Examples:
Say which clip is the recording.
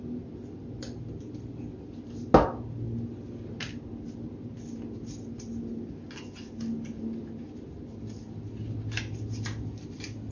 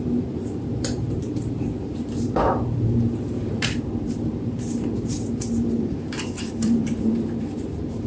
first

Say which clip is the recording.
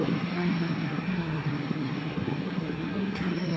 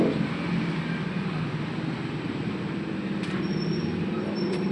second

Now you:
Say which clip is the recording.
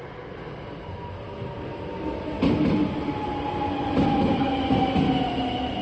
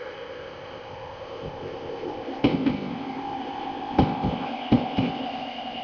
first